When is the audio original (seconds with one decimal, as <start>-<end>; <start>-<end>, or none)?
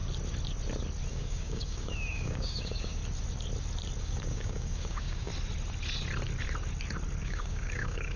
0.0-1.1; 3.0-4.0; 5.3-7.2